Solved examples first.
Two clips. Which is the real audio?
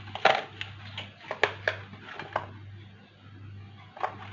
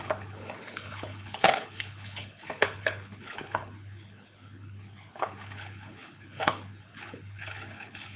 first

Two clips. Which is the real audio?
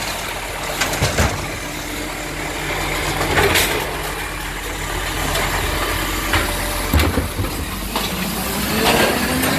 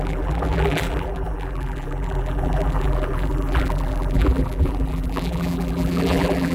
first